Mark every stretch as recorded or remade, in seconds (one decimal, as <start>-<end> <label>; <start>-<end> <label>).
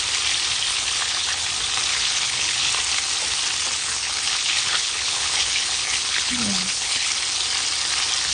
0.0-0.7 recorded; 0.7-1.5 remade; 1.5-1.9 recorded; 1.9-2.7 remade; 2.7-3.8 recorded; 3.8-7.1 remade; 7.1-8.3 recorded